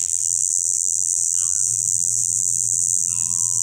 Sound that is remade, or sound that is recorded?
remade